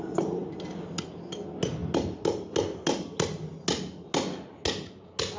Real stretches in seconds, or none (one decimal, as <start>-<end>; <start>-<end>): 0.0-5.4